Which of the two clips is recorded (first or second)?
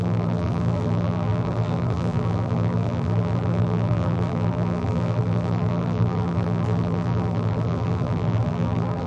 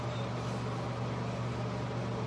second